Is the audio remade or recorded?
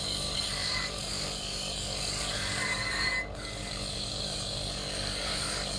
remade